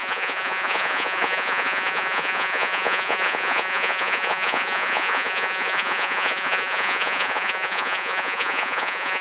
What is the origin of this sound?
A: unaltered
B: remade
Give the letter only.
B